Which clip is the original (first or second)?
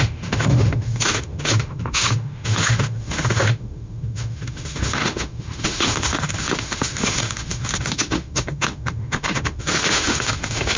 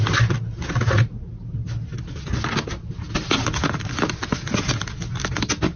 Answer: second